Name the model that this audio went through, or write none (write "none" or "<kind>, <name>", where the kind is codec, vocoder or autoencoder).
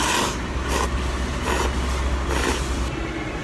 none